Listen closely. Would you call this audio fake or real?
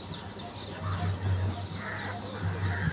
real